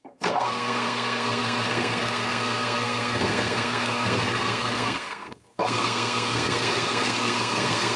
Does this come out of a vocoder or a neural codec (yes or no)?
yes